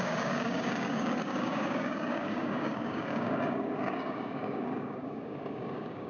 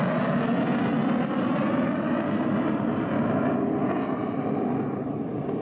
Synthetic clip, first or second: first